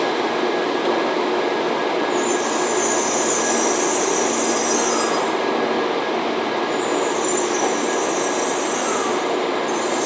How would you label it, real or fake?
real